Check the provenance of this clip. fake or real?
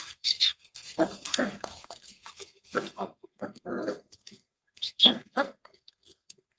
fake